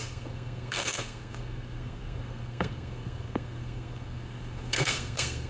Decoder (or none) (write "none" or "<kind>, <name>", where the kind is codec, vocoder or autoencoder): codec, SNAC